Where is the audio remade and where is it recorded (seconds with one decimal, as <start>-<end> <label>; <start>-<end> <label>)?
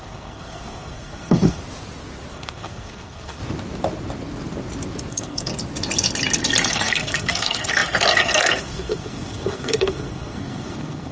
0.0-1.6 remade; 1.6-2.3 recorded; 2.3-3.4 remade; 3.4-5.1 recorded; 5.1-5.5 remade; 5.5-6.7 recorded; 6.7-11.1 remade